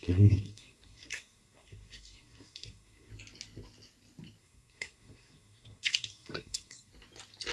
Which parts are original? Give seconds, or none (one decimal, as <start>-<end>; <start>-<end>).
3.1-4.4; 6.9-7.5